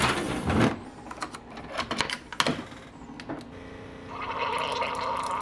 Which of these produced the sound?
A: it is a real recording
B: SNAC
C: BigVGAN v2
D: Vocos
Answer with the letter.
A